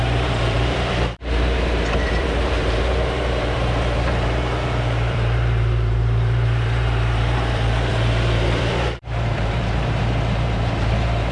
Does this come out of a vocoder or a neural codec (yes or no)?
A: yes